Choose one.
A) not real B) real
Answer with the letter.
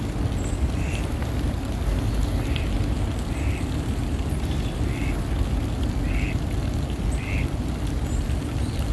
B